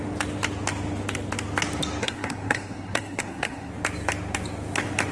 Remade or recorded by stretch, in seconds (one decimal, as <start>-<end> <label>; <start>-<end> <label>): 0.0-2.0 recorded; 2.0-3.7 remade; 3.7-5.1 recorded